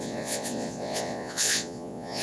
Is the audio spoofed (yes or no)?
yes